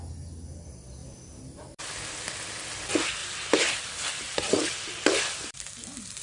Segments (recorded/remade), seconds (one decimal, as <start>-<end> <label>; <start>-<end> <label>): 0.0-1.0 recorded; 1.0-1.8 remade; 1.8-3.2 recorded; 3.2-4.8 remade; 4.8-6.2 recorded